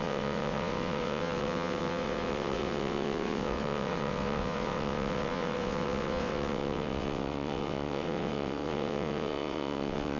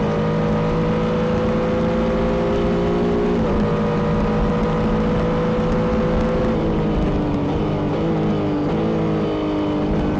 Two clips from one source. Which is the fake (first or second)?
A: first